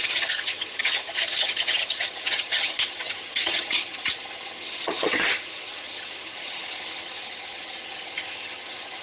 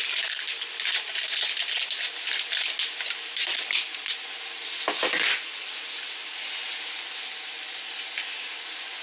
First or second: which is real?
second